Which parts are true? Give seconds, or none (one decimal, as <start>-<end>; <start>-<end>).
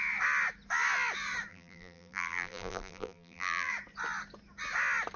0.0-1.5; 3.7-5.2